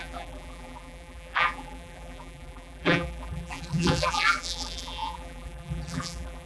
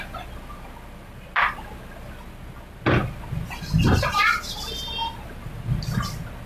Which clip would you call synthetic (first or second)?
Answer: first